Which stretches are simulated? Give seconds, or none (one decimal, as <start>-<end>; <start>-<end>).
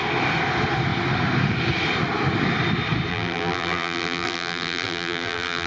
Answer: 3.1-5.7